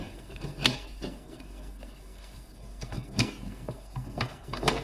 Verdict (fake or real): fake